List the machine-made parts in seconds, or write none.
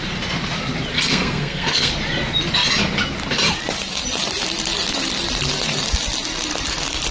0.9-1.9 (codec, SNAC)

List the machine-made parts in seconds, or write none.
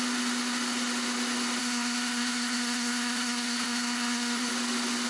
1.6-4.5 (codec, SNAC)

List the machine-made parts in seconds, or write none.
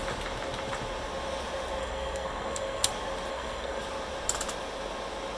1.8-2.9 (codec, SNAC); 3.3-3.8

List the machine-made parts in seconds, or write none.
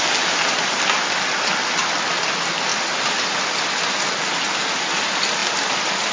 2.7-3.4 (vocoder, BigVGAN v2); 5.4-6.1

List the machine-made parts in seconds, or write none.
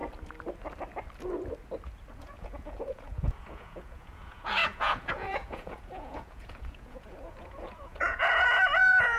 2.2-9.2 (vocoder, Vocos)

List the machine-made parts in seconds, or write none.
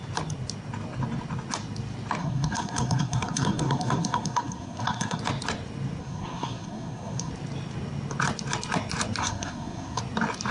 2.2-5.2 (codec, SNAC); 6.0-7.3; 9.2-10.0